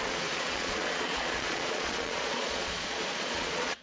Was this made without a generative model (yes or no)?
no